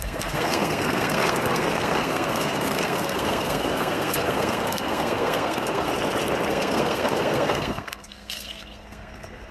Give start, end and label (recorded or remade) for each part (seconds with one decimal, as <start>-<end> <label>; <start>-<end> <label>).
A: 0.0-5.9 remade; 5.9-6.5 recorded; 6.5-9.5 remade